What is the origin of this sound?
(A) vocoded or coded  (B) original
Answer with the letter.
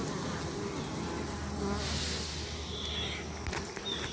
B